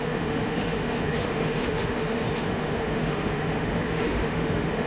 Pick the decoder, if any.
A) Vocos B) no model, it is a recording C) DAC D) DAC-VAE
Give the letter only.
D